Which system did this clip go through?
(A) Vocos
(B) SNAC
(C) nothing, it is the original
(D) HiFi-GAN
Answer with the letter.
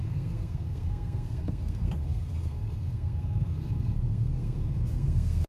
B